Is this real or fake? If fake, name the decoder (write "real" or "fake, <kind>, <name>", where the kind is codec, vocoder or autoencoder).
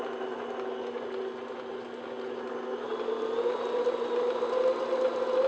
real